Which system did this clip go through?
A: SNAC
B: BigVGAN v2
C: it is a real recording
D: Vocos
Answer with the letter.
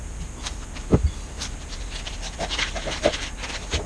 B